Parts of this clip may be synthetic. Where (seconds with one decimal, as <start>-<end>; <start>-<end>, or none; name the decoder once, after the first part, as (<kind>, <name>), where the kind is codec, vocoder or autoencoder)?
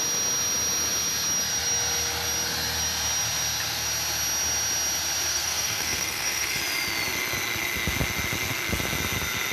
5.3-6.6 (codec, SNAC)